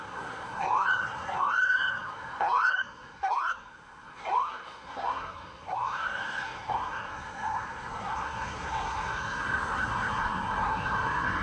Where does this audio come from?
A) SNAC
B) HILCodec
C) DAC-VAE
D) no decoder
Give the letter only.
A